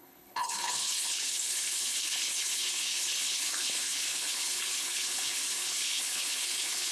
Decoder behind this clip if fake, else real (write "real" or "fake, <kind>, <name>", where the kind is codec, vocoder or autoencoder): fake, codec, HILCodec